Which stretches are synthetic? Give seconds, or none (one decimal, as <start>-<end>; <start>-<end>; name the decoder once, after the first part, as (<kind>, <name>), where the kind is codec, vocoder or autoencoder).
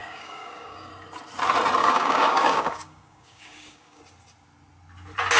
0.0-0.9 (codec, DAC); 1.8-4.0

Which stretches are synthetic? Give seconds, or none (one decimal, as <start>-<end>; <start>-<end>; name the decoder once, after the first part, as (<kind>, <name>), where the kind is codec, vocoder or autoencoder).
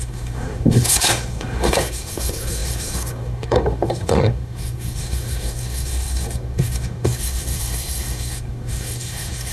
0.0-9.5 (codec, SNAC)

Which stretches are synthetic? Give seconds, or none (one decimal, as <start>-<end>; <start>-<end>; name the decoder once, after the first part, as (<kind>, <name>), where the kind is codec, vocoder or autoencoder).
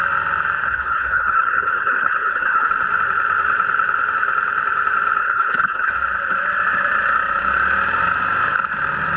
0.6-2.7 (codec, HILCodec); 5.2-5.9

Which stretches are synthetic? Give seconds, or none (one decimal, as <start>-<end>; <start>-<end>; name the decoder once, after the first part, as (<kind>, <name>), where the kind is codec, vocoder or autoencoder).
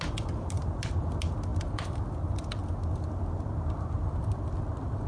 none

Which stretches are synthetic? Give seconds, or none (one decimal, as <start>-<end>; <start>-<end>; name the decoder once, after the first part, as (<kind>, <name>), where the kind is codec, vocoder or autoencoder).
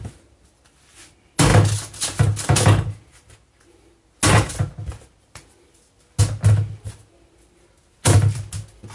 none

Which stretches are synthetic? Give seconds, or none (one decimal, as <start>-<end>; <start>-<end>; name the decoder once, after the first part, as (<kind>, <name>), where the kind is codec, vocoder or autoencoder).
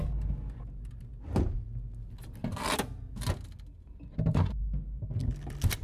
none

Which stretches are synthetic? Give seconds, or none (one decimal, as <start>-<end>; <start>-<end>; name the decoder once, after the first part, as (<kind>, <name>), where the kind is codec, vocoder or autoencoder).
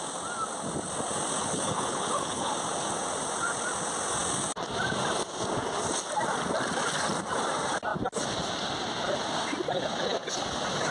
1.4-2.5 (codec, HILCodec)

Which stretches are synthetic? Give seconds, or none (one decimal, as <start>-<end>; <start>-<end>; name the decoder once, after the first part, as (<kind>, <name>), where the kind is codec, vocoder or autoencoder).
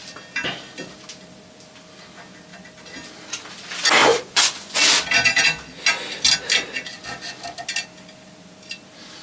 4.0-4.8 (vocoder, Vocos)